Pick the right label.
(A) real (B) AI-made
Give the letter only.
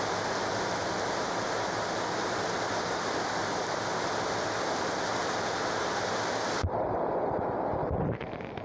A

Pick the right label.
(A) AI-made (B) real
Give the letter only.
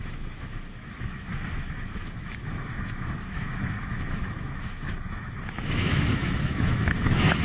A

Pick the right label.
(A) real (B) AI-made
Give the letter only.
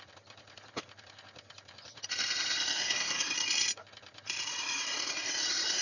B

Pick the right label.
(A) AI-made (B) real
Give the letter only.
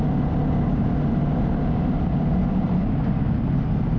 B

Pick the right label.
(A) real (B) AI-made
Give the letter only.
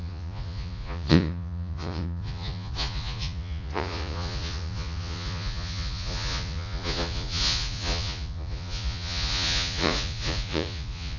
B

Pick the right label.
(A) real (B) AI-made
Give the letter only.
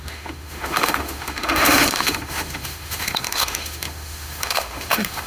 B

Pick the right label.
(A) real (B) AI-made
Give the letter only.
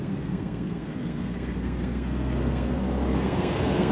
B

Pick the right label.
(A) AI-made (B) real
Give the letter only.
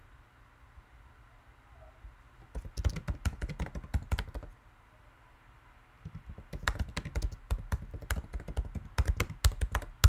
B